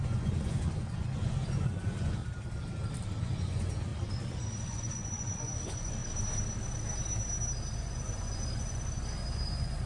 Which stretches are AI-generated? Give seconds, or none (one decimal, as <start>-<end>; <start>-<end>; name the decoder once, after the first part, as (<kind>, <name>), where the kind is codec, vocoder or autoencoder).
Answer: 0.0-2.2 (vocoder, Vocos); 3.2-3.9; 4.6-6.0; 7.8-9.9